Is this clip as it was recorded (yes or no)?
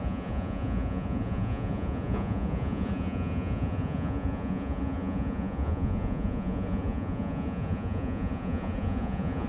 no